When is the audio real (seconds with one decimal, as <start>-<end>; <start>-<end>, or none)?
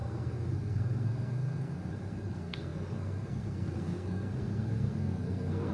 none